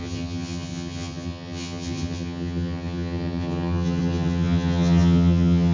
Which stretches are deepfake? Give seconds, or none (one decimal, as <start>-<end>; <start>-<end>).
0.0-5.7